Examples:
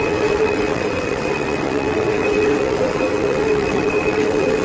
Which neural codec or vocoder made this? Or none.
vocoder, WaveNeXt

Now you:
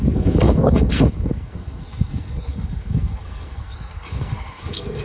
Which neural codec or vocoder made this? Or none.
codec, SNAC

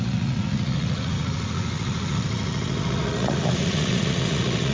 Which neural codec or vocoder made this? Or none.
vocoder, Vocos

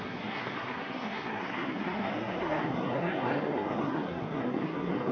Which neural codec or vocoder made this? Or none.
codec, SNAC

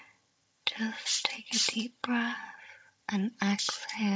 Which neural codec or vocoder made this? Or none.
vocoder, HiFi-GAN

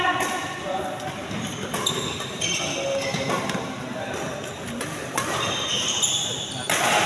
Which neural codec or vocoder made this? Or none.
none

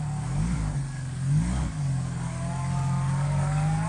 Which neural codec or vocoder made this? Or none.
codec, DAC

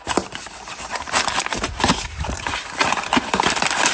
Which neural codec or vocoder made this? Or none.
vocoder, BigVGAN v2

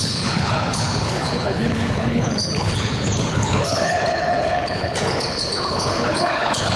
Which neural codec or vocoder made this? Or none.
codec, HILCodec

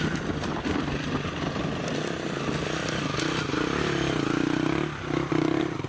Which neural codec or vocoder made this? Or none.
none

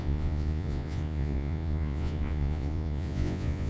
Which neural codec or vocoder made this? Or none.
vocoder, Vocos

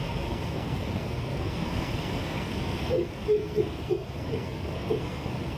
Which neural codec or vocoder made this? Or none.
codec, SNAC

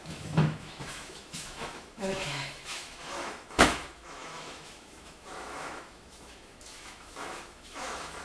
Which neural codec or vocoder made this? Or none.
autoencoder, DAC-VAE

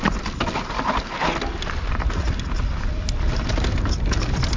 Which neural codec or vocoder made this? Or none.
none